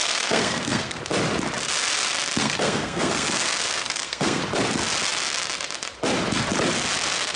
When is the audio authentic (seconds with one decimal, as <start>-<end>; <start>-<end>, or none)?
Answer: 1.0-2.4; 4.4-7.4